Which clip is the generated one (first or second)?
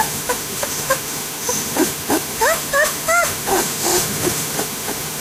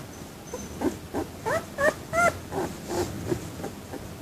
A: first